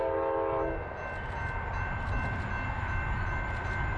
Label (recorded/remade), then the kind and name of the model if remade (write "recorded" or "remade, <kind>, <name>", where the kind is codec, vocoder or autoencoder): recorded